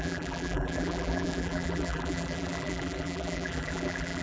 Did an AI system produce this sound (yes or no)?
yes